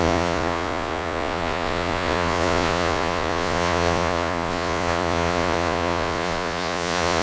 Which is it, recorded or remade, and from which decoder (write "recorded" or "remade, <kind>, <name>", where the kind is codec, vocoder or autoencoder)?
remade, vocoder, Vocos